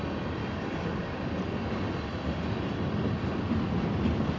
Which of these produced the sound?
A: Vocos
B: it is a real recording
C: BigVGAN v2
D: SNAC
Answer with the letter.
B